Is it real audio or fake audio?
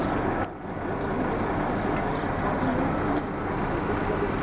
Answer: real